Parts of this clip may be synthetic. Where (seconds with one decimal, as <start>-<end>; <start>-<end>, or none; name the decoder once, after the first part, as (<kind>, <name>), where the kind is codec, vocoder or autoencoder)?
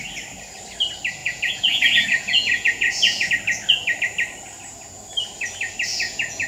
1.2-3.3 (vocoder, Vocos); 5.9-6.5